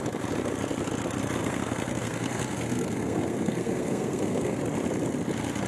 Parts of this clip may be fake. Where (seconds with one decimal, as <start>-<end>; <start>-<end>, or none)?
1.4-4.6